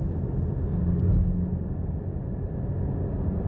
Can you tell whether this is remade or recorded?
recorded